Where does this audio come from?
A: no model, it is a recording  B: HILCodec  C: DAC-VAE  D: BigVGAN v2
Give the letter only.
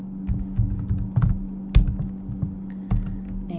A